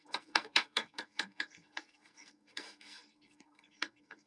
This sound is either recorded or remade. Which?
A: remade